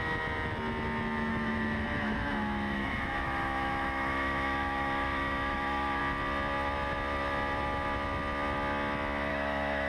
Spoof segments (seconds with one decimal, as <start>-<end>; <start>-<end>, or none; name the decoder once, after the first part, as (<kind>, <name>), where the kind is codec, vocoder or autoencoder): 1.3-6.0 (autoencoder, DAC-VAE); 9.3-9.9